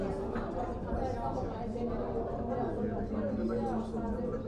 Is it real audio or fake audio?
real